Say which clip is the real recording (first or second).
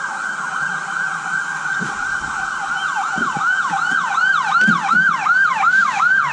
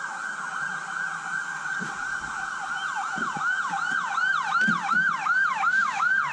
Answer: second